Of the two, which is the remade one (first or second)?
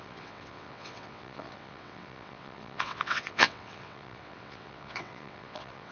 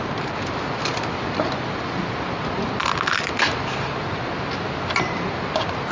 first